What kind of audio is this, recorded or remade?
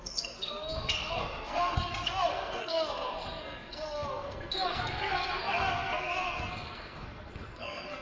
remade